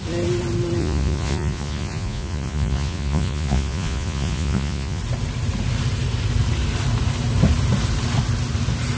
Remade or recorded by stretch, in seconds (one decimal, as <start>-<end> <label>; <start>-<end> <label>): 0.0-0.8 recorded; 0.8-5.0 remade; 5.0-9.0 recorded